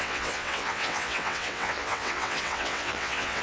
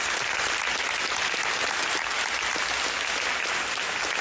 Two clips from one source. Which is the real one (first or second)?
second